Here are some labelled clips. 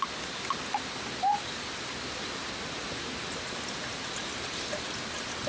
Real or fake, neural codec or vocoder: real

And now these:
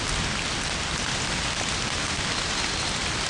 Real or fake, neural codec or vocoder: real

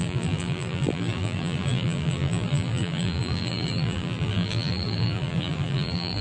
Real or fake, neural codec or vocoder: fake, vocoder, BigVGAN v2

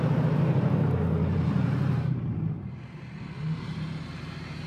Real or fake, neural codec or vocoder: fake, vocoder, BigVGAN v2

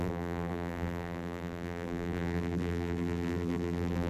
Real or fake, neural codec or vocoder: fake, vocoder, BigVGAN v2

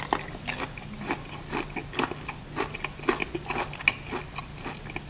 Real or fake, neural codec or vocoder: real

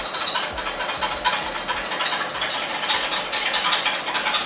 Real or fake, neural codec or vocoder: real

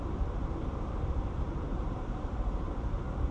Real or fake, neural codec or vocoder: fake, vocoder, BigVGAN v2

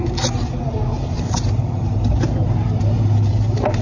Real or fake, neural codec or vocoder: fake, vocoder, BigVGAN v2